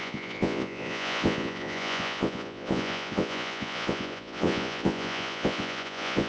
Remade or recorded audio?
remade